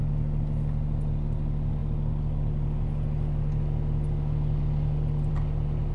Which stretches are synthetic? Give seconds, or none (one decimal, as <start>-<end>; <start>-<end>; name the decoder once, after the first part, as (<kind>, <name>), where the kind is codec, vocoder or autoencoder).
none